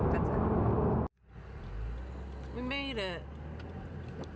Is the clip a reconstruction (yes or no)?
no